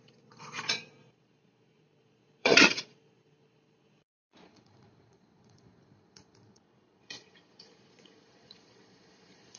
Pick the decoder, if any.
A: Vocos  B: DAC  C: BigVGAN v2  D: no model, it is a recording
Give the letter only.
A